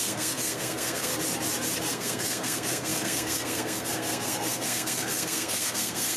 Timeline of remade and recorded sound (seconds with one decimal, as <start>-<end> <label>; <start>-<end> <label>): 0.0-1.1 remade; 1.1-1.9 recorded; 1.9-6.2 remade